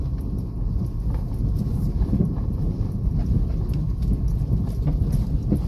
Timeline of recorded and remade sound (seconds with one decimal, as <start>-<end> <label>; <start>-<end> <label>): 0.0-1.7 recorded; 1.7-3.1 remade; 3.1-5.7 recorded